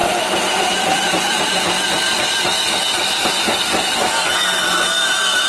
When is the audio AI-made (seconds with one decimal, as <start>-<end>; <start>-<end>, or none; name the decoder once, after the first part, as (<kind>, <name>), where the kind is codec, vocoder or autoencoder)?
none